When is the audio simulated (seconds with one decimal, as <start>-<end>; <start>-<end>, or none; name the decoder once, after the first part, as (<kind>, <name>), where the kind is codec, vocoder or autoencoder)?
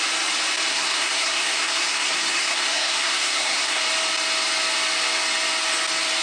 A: 0.7-3.8 (codec, SNAC)